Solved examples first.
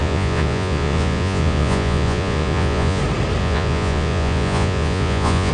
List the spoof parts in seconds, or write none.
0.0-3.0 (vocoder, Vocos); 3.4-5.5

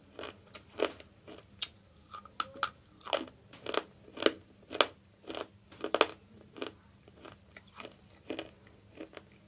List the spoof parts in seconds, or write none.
none

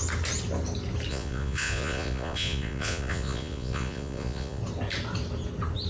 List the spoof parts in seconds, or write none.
1.1-4.6 (vocoder, Vocos)

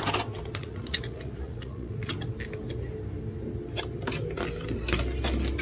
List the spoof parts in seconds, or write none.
0.6-2.1 (vocoder, Vocos)

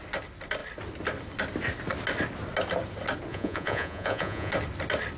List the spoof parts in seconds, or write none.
3.3-4.5 (vocoder, Vocos)

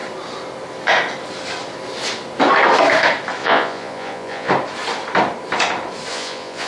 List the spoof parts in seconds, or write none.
3.4-4.5 (vocoder, Vocos); 6.1-6.7

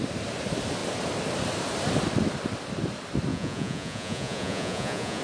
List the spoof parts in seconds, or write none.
3.3-5.2 (vocoder, Vocos)